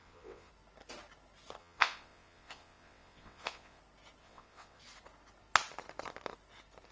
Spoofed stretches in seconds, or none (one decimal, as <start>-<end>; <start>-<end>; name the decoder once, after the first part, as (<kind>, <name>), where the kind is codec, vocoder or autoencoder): 0.0-0.5 (vocoder, WaveNeXt); 1.6-3.8; 4.2-4.8